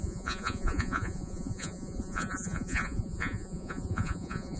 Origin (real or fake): fake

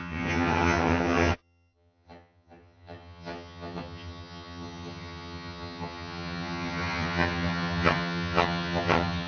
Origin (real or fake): fake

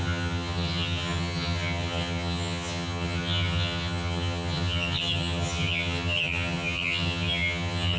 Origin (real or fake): fake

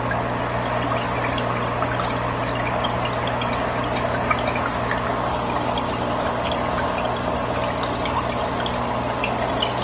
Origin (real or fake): real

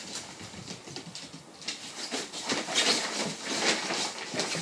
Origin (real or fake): real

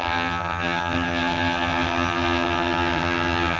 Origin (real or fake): fake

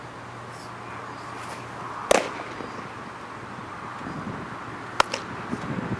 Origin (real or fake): real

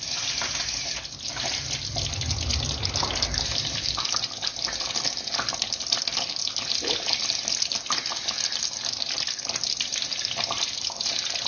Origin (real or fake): real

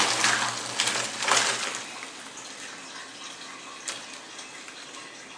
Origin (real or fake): real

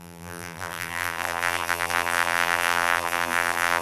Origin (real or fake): fake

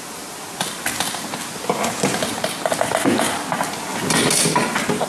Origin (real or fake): real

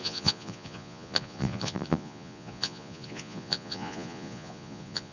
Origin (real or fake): fake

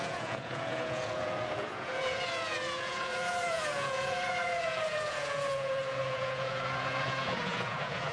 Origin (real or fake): fake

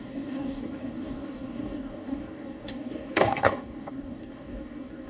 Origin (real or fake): fake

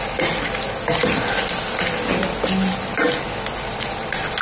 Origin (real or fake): real